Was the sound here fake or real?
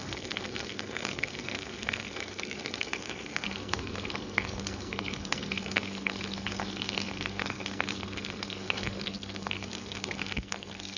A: fake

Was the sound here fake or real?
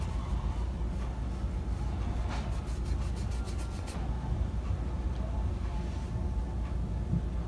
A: real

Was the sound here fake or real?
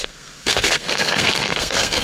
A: fake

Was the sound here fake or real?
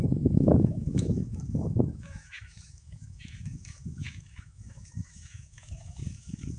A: fake